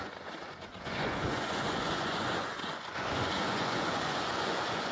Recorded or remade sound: remade